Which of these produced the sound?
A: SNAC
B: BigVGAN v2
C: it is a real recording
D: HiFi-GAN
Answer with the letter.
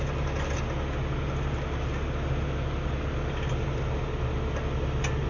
C